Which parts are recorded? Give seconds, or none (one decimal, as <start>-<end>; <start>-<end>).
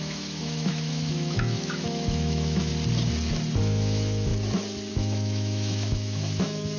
2.7-3.6; 4.3-4.9